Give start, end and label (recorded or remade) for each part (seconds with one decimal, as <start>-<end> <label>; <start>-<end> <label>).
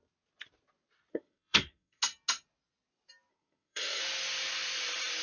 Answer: 0.0-1.1 recorded; 1.1-2.0 remade; 2.0-3.3 recorded; 3.3-4.0 remade; 4.0-5.2 recorded